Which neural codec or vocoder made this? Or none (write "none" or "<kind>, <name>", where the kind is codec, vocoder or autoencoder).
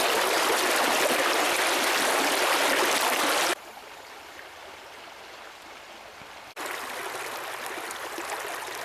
none